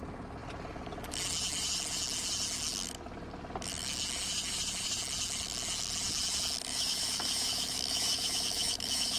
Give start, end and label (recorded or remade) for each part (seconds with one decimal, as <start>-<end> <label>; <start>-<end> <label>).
0.0-6.7 recorded; 6.7-9.2 remade